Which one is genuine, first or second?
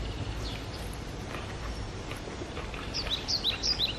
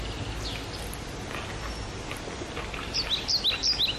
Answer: second